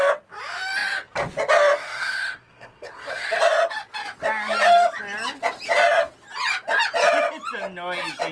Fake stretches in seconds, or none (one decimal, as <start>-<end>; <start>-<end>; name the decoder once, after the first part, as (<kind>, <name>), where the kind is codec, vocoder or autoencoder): 1.8-3.4 (codec, SNAC)